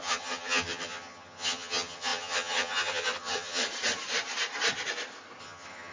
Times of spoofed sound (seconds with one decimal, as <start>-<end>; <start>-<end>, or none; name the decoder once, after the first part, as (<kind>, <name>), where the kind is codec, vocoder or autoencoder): 0.0-3.6 (vocoder, HiFi-GAN); 5.4-5.9